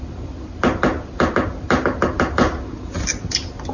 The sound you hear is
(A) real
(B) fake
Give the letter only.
A